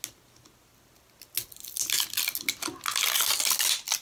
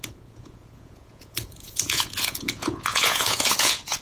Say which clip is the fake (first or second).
second